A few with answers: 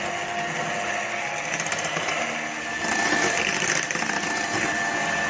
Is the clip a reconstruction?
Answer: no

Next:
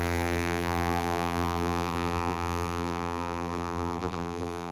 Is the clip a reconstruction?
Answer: yes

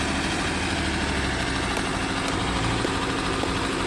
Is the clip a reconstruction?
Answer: no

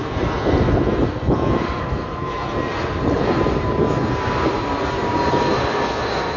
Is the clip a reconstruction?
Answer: no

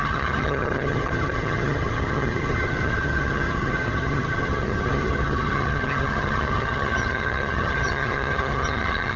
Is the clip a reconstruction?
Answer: yes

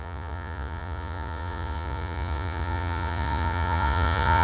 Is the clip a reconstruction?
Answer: yes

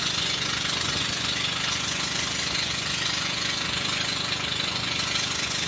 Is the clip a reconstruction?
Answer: yes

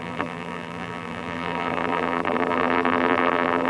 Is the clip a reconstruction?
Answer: yes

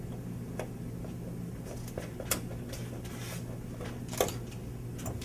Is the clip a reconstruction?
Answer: no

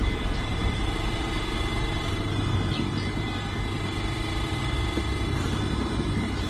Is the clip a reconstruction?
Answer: yes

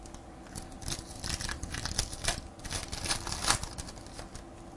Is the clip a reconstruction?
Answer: no